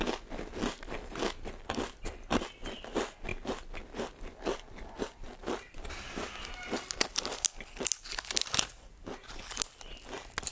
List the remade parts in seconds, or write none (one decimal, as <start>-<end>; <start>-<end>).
none